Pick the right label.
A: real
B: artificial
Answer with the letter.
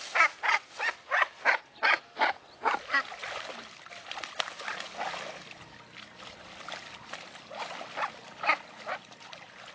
A